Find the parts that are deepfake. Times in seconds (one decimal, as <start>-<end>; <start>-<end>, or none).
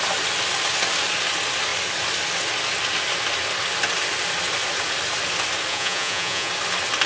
5.7-6.5